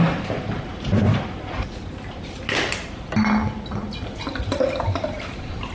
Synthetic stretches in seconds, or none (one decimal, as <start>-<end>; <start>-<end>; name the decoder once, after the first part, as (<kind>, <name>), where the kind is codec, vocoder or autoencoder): 0.7-2.4 (vocoder, BigVGAN v2)